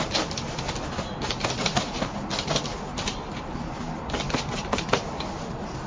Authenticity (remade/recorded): recorded